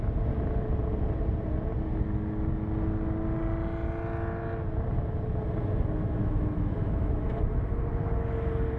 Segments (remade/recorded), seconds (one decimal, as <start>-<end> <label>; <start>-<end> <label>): 0.0-6.0 recorded; 6.0-7.8 remade; 7.8-8.8 recorded